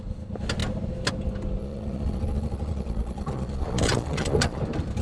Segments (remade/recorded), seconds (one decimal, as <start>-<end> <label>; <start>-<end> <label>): 0.0-1.6 recorded; 1.6-4.6 remade; 4.6-5.0 recorded